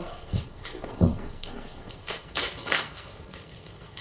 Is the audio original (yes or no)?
no